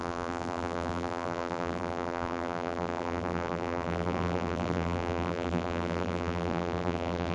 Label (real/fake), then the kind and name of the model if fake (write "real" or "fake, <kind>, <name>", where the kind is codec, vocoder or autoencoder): fake, vocoder, BigVGAN v2